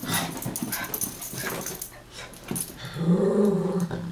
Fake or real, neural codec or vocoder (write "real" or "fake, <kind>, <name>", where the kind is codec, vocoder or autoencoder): real